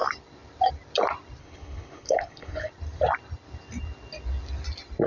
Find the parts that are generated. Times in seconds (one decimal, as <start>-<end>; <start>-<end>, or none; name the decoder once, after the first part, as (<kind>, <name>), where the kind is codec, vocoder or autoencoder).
1.4-2.7 (codec, HILCodec)